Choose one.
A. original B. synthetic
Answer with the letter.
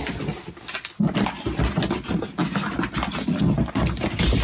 A